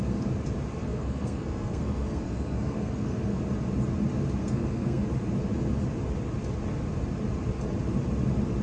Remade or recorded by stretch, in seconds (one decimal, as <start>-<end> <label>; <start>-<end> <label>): 0.0-0.8 recorded; 0.8-3.4 remade; 3.4-4.4 recorded; 4.4-5.0 remade; 5.0-8.6 recorded